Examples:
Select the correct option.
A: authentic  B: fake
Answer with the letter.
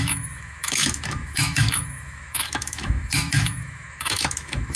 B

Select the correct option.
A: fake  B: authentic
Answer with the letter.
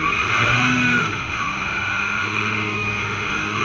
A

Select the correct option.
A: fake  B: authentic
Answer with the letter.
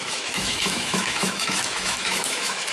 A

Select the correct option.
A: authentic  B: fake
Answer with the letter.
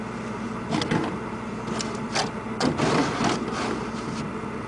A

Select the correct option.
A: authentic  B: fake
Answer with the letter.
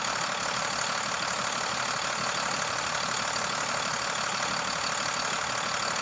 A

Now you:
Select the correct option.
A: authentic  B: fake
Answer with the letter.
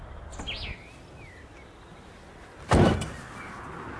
A